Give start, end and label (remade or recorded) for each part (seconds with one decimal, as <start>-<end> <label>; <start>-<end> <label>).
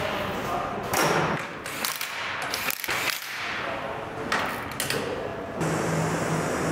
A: 0.0-6.7 recorded